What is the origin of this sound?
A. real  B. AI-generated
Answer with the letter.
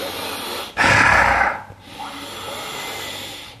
A